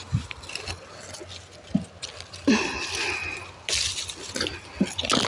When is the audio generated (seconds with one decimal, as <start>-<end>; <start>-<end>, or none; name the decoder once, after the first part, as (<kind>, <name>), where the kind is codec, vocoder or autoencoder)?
none